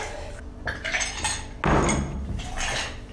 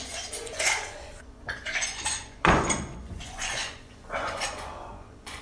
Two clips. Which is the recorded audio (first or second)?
first